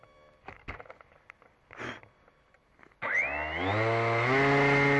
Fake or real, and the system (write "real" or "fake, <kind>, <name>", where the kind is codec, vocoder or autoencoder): real